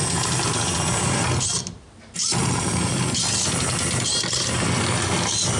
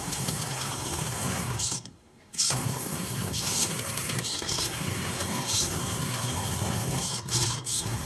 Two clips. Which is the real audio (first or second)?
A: first